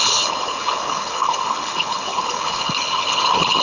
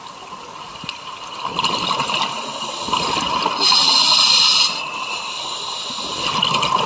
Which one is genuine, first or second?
second